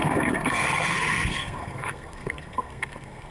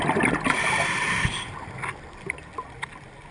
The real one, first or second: second